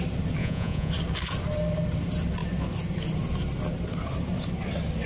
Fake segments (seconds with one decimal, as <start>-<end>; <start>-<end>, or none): 0.4-0.9